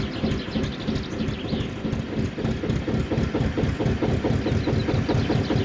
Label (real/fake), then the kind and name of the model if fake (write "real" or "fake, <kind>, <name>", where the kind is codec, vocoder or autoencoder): real